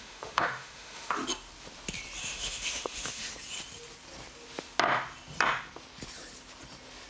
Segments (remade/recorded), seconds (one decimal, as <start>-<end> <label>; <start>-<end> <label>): 0.0-1.2 remade; 1.2-2.2 recorded; 2.2-3.3 remade; 3.3-7.1 recorded